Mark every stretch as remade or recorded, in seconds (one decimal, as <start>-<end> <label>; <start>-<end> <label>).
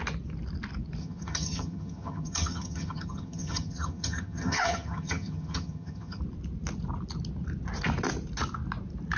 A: 0.0-1.0 recorded; 1.0-6.2 remade; 6.2-9.2 recorded